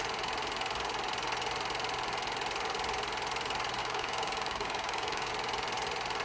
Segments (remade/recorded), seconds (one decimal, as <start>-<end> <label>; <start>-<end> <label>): 0.0-3.8 recorded; 3.8-5.3 remade; 5.3-6.2 recorded